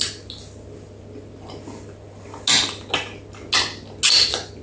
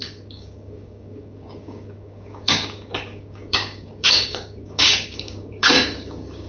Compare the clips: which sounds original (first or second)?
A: first